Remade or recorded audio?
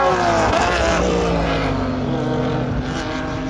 recorded